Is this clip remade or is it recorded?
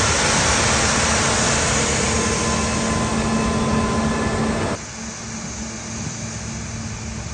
recorded